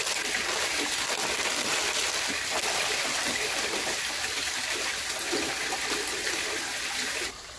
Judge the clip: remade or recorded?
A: remade